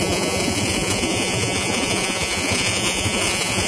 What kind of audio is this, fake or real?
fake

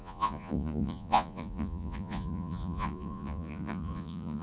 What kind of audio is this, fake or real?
fake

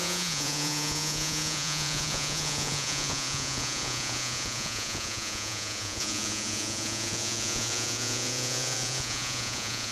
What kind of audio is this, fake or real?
fake